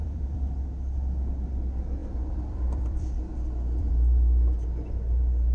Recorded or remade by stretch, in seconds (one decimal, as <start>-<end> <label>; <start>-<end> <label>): 0.0-0.5 remade; 0.5-2.0 recorded; 2.0-3.9 remade; 3.9-5.5 recorded